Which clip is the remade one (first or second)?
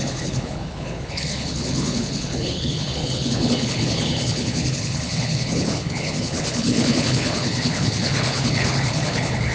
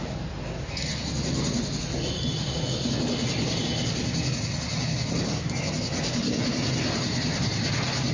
first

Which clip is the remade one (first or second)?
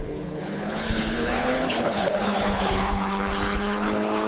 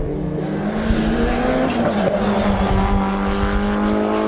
first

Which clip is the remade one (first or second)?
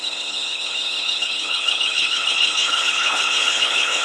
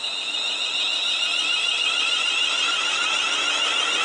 first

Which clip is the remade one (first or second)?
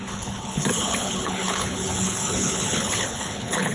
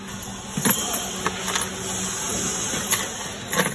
first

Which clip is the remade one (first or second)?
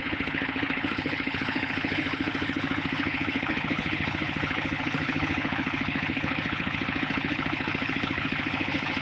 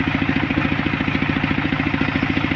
first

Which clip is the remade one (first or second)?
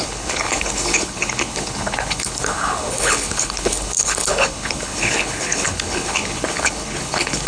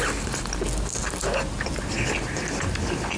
first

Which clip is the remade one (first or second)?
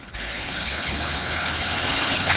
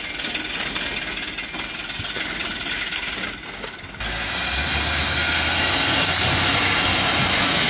first